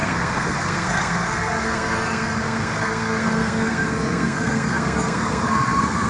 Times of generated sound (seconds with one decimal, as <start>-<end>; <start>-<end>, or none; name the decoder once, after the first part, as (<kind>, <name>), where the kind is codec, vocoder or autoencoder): 0.0-6.1 (codec, SNAC)